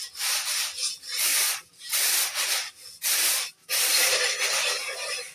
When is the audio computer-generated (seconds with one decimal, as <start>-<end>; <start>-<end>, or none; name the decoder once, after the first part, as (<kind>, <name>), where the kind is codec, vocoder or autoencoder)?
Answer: none